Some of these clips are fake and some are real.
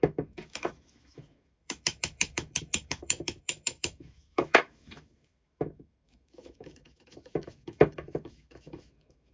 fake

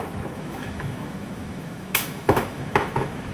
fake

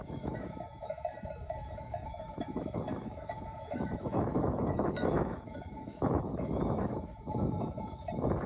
fake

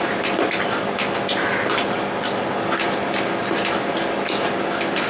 real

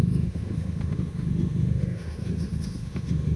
fake